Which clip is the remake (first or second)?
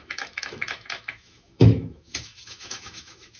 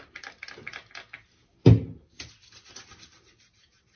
first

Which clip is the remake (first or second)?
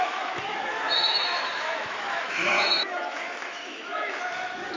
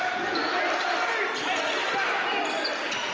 first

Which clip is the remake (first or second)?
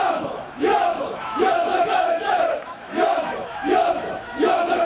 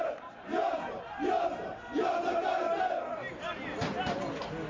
first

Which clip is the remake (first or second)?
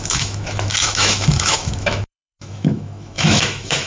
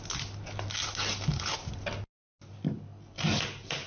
first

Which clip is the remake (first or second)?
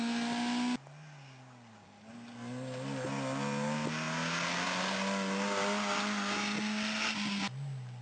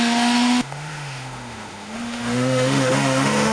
second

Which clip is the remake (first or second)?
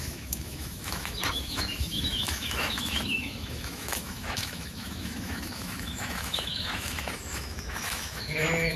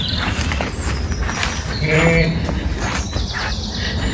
first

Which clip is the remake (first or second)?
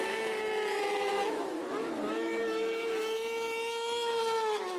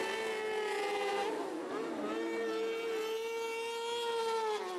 first